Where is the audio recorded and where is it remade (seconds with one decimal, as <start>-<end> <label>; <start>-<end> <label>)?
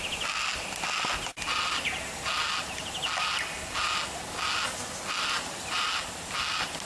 0.0-6.8 recorded